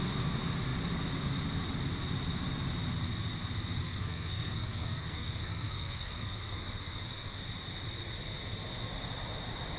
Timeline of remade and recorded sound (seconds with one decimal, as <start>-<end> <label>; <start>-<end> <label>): 0.0-3.8 recorded; 3.8-7.4 remade; 7.4-9.8 recorded